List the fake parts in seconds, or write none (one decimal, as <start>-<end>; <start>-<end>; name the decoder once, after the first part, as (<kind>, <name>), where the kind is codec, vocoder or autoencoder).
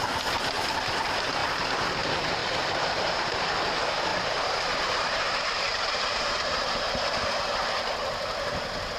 2.4-3.4 (vocoder, BigVGAN v2); 4.1-7.4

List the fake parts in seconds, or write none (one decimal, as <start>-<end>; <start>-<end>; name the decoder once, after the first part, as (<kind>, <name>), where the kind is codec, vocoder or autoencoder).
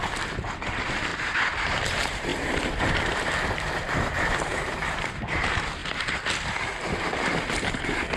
0.0-1.1 (vocoder, BigVGAN v2); 1.8-5.8; 7.0-8.2